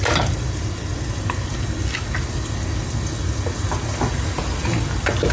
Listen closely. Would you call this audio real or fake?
real